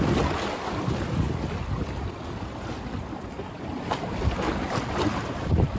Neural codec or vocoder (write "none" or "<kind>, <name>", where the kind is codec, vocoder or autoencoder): none